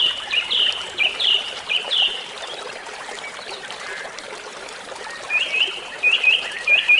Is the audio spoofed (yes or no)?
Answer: yes